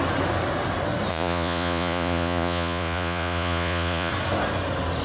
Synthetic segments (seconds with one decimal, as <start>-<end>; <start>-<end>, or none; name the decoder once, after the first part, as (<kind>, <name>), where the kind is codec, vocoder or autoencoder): 1.1-4.1 (vocoder, Vocos)